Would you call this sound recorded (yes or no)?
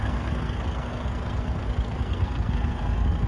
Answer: no